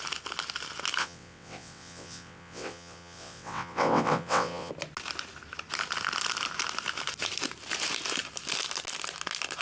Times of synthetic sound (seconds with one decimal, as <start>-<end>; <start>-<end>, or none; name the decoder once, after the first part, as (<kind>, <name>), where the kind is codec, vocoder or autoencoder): 1.0-4.7 (vocoder, WaveNeXt)